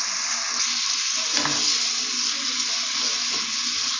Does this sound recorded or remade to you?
recorded